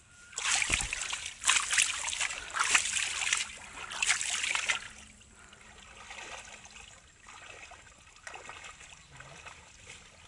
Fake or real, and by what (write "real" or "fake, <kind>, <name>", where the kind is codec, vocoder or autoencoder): fake, vocoder, BigVGAN v2